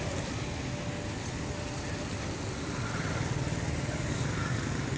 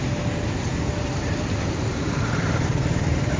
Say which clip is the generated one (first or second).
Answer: second